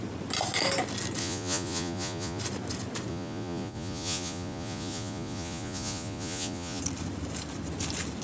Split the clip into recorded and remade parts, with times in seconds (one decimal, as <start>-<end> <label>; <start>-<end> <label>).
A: 0.0-1.2 recorded; 1.2-2.4 remade; 2.4-3.1 recorded; 3.1-6.8 remade; 6.8-8.2 recorded